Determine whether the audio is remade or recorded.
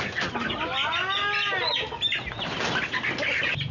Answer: recorded